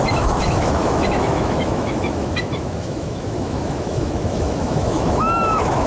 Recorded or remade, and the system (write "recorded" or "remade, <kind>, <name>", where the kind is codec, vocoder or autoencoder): remade, autoencoder, DAC-VAE